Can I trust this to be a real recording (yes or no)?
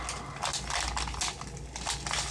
yes